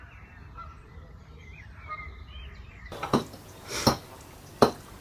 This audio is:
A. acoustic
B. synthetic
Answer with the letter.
B